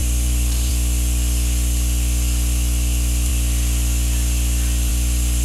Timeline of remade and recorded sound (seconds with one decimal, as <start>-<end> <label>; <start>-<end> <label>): 0.0-0.7 remade; 0.7-5.4 recorded